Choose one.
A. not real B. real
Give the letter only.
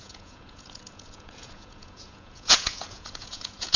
A